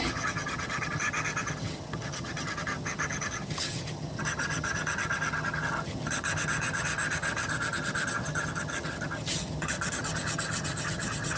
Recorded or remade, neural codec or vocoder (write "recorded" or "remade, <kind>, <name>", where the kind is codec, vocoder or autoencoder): remade, vocoder, HiFi-GAN